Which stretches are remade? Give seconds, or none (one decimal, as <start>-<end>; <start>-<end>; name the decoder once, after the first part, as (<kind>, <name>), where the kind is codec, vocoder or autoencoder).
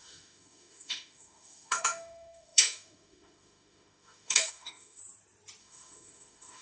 0.0-5.0 (autoencoder, DAC-VAE); 5.6-6.6